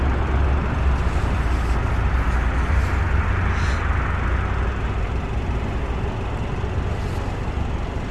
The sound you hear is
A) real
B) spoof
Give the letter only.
A